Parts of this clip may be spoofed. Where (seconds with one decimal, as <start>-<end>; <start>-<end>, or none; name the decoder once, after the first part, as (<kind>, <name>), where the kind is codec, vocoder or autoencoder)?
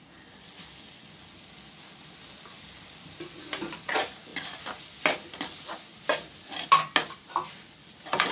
none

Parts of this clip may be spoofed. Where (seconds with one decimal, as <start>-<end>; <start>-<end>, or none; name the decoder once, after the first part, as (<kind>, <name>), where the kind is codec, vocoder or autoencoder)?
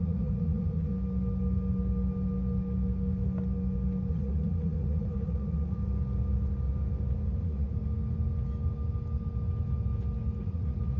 0.0-0.9 (vocoder, Vocos); 4.1-5.8; 7.3-7.8; 10.4-11.0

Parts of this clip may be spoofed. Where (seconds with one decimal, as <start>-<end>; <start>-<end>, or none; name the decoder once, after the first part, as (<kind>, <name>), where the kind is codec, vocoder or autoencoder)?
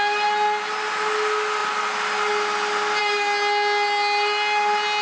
none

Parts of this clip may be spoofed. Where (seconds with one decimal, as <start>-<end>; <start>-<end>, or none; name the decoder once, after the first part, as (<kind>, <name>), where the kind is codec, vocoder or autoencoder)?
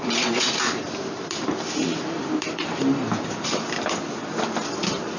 none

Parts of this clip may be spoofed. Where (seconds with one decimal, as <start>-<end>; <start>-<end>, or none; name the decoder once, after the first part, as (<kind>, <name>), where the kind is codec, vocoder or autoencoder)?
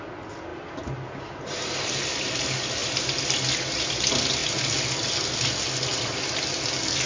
none